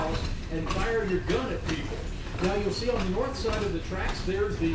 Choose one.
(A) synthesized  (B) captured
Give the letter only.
B